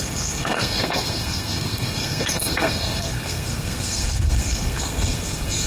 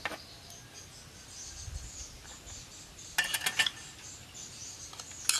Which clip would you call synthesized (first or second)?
first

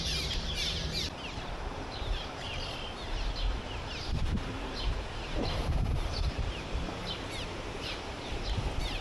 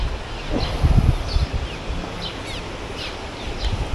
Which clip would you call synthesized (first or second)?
first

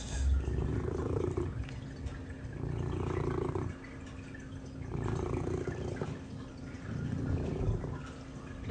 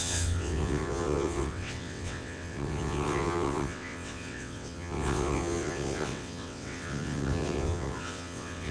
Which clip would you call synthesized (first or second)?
second